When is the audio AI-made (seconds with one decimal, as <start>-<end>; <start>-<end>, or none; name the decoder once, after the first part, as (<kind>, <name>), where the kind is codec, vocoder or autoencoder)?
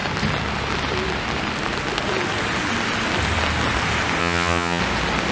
4.2-4.8 (vocoder, HiFi-GAN)